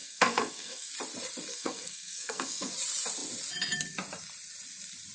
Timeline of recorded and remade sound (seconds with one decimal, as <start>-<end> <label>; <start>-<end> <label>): 0.0-0.9 remade; 0.9-1.5 recorded; 1.5-2.7 remade; 2.7-5.1 recorded